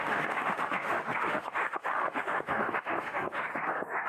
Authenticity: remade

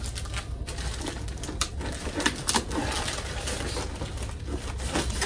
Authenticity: recorded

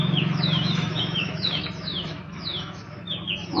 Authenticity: remade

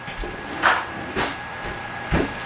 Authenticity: recorded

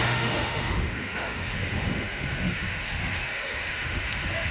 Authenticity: remade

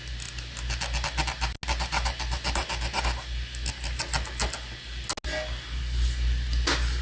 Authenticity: recorded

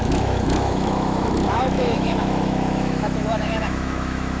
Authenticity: remade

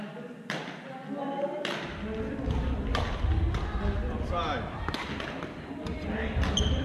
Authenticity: recorded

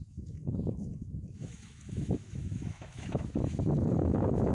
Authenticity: remade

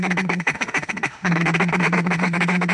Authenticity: remade